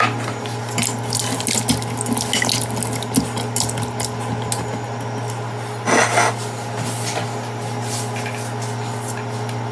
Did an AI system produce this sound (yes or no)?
no